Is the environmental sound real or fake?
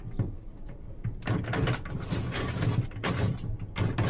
real